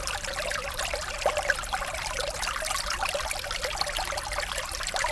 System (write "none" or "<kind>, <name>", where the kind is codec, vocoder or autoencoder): none